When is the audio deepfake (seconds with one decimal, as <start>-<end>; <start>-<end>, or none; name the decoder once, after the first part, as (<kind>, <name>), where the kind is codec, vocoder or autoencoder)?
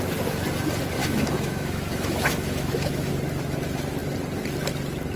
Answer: 1.0-3.1 (autoencoder, DAC-VAE)